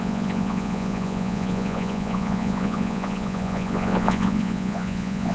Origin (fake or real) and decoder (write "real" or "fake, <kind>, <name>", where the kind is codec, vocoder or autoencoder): fake, vocoder, Vocos